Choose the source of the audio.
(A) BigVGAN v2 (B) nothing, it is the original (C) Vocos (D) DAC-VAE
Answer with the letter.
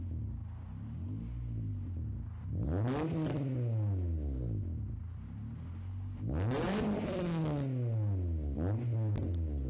B